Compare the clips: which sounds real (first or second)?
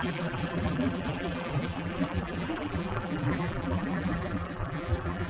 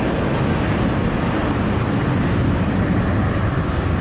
second